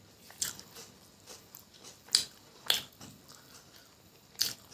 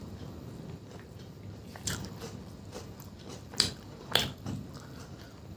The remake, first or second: second